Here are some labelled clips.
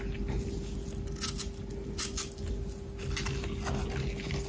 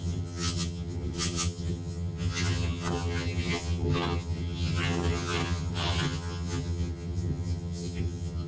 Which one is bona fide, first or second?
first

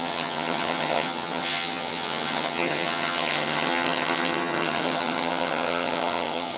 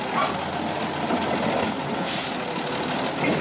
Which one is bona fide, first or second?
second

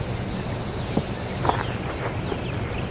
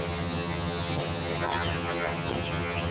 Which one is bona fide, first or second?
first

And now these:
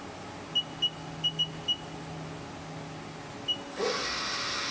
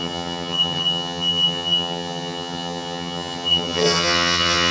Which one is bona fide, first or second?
first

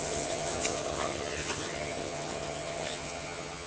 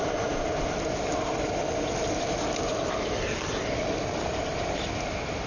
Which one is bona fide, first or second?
second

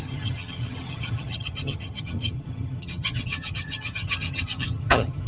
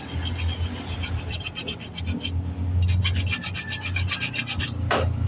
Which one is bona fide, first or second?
second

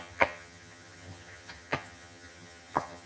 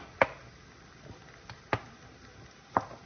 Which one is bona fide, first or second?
second